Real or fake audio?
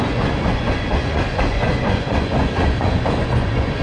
fake